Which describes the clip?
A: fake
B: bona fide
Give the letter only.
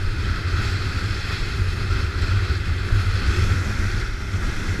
B